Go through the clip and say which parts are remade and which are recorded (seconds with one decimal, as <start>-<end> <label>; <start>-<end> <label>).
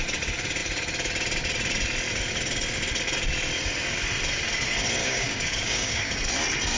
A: 0.0-5.0 recorded; 5.0-6.1 remade; 6.1-6.8 recorded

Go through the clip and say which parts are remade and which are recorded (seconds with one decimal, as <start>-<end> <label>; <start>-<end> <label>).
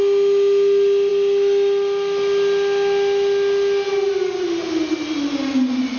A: 0.0-6.0 recorded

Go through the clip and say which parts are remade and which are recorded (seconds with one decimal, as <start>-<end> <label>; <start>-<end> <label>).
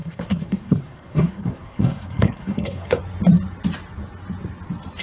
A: 0.0-3.0 remade; 3.0-5.0 recorded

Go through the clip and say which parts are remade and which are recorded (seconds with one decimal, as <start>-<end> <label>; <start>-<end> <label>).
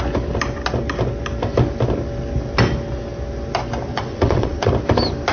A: 0.0-3.9 recorded; 3.9-4.7 remade; 4.7-5.3 recorded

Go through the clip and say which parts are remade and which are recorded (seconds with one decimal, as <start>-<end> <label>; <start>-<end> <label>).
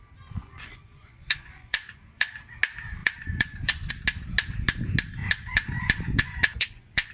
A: 0.0-0.4 recorded; 0.4-2.3 remade; 2.3-3.0 recorded; 3.0-3.9 remade; 3.9-5.2 recorded; 5.2-7.1 remade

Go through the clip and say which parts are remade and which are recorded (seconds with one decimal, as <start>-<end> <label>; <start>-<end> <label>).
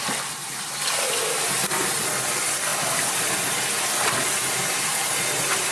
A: 0.0-0.4 recorded; 0.4-2.1 remade; 2.1-5.7 recorded